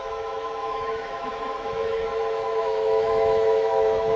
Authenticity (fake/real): fake